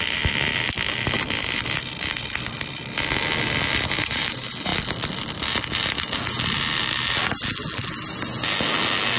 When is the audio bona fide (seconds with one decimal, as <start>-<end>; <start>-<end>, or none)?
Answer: 0.5-4.0; 4.7-9.2